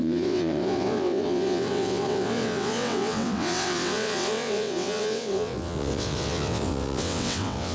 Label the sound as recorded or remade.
remade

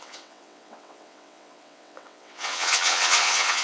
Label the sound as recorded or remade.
remade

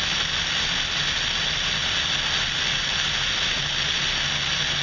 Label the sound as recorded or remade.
recorded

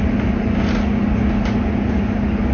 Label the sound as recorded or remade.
recorded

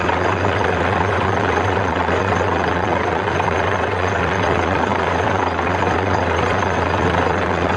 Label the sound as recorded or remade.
remade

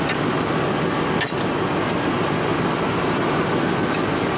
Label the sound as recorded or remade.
recorded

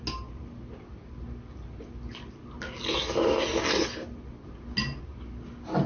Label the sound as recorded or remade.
recorded